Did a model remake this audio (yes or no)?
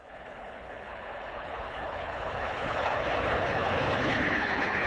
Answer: yes